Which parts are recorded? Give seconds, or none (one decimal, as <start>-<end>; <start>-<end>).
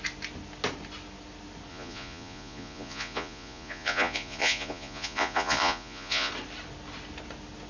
0.0-1.7; 6.3-7.7